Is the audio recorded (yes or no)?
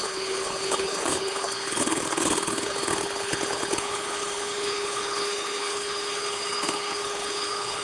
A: no